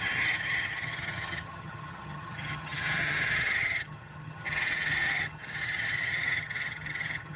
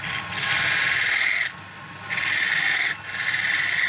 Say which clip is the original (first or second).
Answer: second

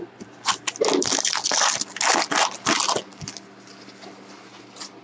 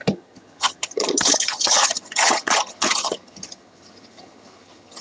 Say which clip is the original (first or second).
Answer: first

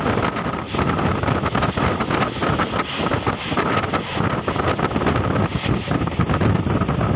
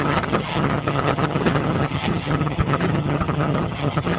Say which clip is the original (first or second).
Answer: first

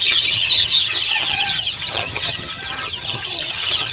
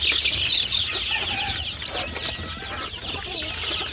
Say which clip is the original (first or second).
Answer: second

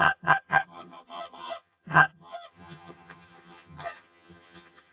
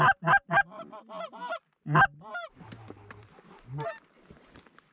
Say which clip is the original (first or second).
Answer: second